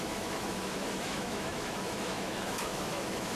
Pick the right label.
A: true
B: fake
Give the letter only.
B